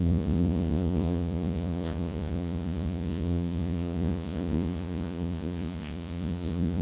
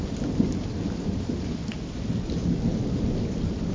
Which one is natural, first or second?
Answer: second